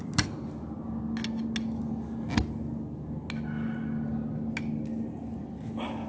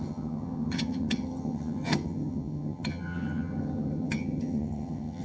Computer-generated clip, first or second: second